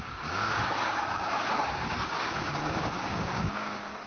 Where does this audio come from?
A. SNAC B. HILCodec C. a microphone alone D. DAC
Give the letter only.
D